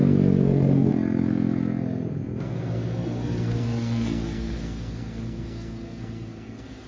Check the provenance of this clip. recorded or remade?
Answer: remade